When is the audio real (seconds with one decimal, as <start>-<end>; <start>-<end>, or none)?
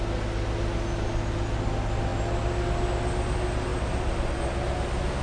0.0-5.2